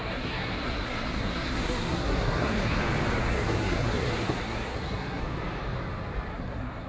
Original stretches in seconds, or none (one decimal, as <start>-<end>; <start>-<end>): 2.8-3.2; 5.2-6.3